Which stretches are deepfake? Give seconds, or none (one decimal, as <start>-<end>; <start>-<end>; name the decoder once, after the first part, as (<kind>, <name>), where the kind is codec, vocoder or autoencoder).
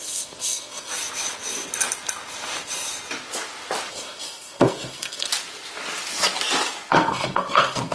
0.0-0.9 (codec, SNAC); 3.9-5.3; 6.9-7.9